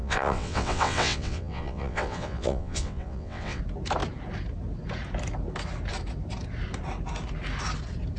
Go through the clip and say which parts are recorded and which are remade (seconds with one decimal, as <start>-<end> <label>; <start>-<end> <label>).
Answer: 0.0-3.6 remade; 3.6-8.2 recorded